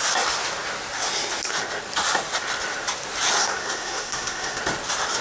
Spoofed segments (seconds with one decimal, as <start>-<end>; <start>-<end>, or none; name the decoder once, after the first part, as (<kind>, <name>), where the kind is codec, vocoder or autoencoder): 3.4-4.6 (codec, SNAC)